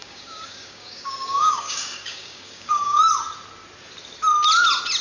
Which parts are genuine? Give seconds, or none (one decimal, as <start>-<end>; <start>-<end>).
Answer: 3.0-5.0

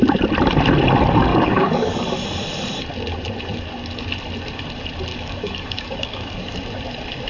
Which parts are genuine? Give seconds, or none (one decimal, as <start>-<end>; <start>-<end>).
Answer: 0.0-1.3; 2.0-5.1; 6.6-7.3